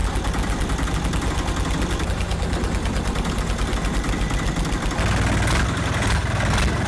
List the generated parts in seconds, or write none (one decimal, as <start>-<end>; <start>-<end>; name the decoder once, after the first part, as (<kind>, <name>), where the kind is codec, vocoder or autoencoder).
none